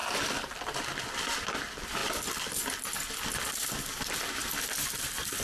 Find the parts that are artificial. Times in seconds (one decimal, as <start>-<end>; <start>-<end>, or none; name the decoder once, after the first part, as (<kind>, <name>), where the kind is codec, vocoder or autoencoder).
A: 1.5-5.4 (vocoder, BigVGAN v2)